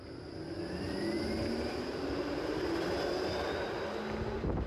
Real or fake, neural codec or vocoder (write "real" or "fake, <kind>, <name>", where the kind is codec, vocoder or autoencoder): real